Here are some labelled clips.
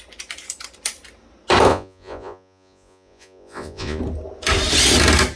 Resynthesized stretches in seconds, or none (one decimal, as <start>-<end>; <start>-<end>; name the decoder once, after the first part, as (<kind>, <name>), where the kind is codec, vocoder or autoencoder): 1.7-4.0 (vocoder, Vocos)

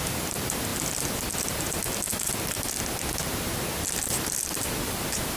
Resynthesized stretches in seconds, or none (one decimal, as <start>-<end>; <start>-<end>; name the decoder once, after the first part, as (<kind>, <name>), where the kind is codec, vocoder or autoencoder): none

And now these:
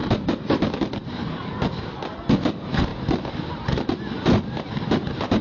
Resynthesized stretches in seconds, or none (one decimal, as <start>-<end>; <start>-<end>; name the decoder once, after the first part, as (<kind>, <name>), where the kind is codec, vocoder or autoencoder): none

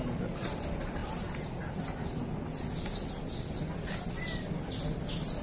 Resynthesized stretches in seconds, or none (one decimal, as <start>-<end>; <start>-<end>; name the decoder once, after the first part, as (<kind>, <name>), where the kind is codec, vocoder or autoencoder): none

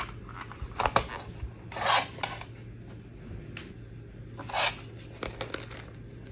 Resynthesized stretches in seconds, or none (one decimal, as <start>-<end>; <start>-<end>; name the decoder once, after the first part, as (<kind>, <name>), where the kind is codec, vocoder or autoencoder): none